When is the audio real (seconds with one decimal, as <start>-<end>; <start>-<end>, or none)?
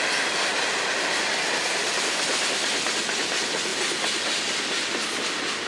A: 0.0-5.7